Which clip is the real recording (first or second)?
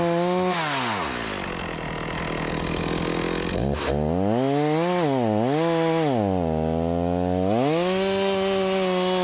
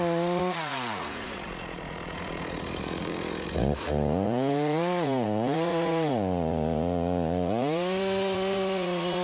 first